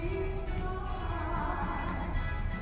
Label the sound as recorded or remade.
recorded